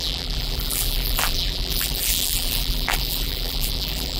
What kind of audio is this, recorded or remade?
remade